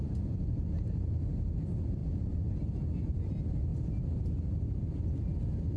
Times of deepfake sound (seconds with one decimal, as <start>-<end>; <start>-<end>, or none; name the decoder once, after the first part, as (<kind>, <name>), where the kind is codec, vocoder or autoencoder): none

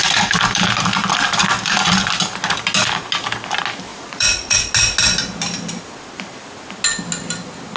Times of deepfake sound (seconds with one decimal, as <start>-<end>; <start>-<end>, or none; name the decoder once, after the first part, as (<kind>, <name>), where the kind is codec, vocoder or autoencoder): 3.9-4.7 (vocoder, Vocos)

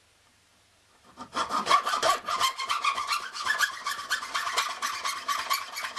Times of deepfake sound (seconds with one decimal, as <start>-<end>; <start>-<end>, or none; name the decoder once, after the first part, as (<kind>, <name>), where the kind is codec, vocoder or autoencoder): 1.3-4.5 (vocoder, Vocos)

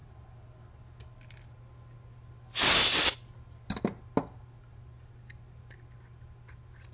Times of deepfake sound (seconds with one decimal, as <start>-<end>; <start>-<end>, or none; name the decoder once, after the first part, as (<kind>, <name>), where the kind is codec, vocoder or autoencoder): none

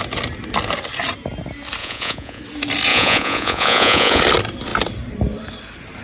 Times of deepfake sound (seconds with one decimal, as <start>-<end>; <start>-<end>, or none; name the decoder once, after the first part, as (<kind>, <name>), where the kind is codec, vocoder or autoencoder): 1.8-2.4 (vocoder, Vocos); 2.9-4.2

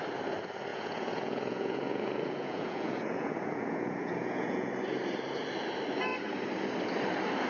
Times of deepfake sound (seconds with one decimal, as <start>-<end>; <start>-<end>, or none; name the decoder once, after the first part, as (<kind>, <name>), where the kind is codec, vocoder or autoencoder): 0.7-4.7 (vocoder, Vocos)

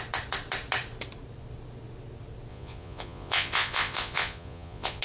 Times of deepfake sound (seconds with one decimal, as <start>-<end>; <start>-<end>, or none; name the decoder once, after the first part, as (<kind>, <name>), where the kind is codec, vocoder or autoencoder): 2.5-5.0 (vocoder, Vocos)

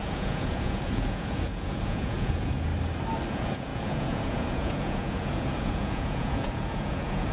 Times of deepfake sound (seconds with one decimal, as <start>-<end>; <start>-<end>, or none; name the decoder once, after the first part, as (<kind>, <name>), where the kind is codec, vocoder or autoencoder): 0.0-2.7 (vocoder, Vocos); 3.3-7.3